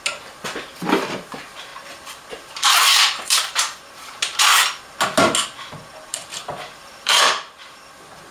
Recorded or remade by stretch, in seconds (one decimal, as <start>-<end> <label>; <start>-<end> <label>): 0.0-1.7 recorded; 1.7-4.2 remade; 4.2-6.1 recorded; 6.1-7.8 remade; 7.8-8.3 recorded